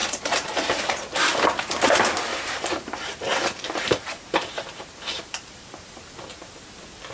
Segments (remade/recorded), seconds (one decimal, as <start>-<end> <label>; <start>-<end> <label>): 0.0-0.8 remade; 0.8-2.3 recorded; 2.3-5.9 remade; 5.9-7.1 recorded